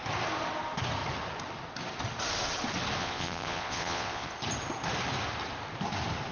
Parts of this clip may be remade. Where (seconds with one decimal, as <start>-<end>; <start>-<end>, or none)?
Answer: 3.0-4.3

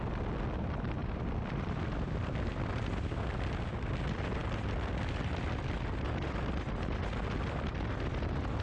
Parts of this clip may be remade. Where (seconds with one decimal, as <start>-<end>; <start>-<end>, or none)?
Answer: 1.0-1.9

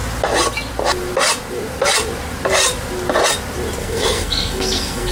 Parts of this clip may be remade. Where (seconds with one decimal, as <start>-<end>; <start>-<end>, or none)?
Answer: 3.8-5.1

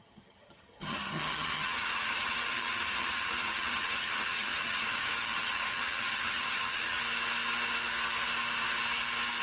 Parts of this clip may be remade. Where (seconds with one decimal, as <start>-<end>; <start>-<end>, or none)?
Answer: 0.0-7.0

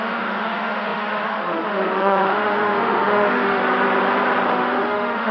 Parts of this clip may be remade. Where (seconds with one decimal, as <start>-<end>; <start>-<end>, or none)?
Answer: 0.0-3.6; 4.5-5.3

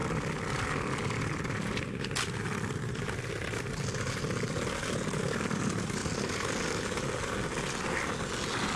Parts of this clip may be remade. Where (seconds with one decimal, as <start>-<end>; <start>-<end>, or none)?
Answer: none